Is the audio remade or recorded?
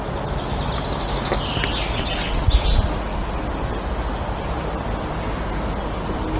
recorded